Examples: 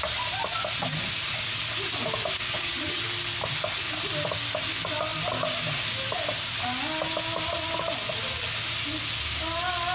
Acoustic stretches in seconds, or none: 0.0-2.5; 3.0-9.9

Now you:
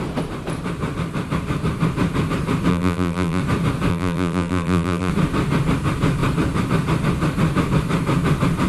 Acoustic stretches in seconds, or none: 0.0-2.7; 3.4-3.9; 5.1-8.7

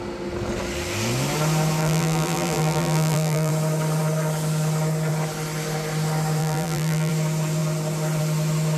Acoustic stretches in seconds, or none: 0.0-1.8; 3.5-6.4; 7.1-8.8

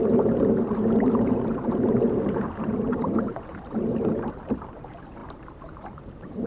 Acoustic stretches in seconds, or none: none

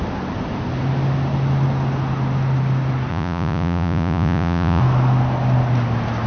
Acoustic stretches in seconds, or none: 0.0-3.1; 4.8-6.3